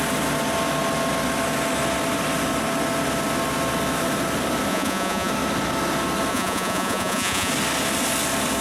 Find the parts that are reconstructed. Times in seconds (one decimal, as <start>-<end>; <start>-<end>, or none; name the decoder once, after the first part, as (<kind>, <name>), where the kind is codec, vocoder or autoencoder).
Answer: 4.7-5.3 (vocoder, Vocos); 6.3-7.5